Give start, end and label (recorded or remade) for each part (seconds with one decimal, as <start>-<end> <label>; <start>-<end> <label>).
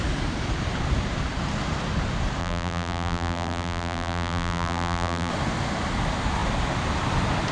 0.0-2.4 recorded; 2.4-5.3 remade; 5.3-7.5 recorded